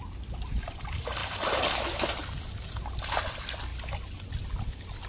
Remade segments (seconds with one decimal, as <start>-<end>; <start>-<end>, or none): 1.2-2.9